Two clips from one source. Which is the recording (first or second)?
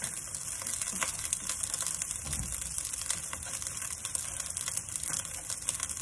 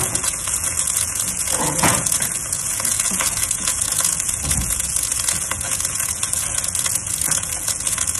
first